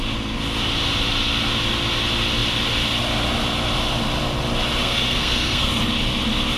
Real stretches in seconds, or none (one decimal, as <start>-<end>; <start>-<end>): 0.0-4.8; 5.7-6.6